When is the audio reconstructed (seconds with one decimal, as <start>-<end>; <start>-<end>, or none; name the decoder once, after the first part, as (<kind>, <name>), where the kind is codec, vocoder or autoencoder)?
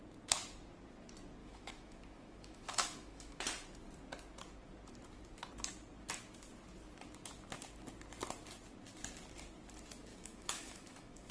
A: 1.4-3.4 (autoencoder, DAC-VAE); 10.1-11.3